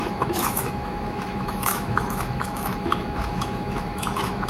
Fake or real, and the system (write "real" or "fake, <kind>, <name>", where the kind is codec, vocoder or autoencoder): fake, autoencoder, DAC-VAE